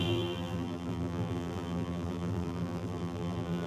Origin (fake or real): fake